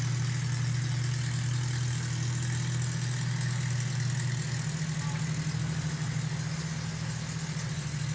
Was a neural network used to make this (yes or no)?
no